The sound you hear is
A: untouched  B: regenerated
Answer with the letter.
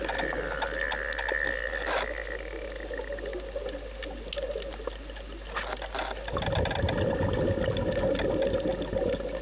A